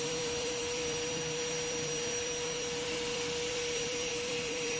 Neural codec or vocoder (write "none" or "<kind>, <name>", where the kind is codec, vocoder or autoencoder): vocoder, BigVGAN v2